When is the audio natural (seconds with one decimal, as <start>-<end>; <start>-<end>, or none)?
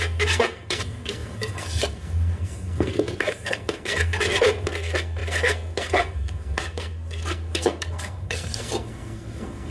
none